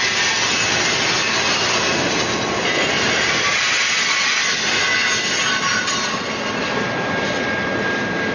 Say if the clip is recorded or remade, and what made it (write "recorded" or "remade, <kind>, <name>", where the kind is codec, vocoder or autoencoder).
recorded